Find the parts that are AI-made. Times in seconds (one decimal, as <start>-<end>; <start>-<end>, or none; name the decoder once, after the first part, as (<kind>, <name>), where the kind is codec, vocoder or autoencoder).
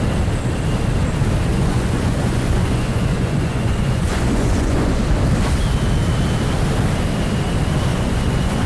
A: 1.5-5.0 (vocoder, Vocos); 7.9-8.7